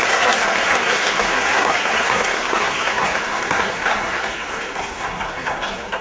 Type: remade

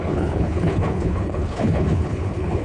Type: remade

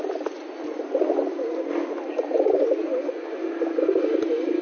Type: recorded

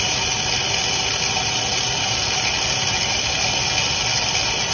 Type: recorded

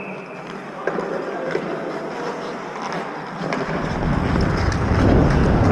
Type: recorded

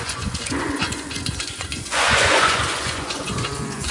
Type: remade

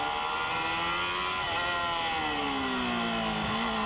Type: recorded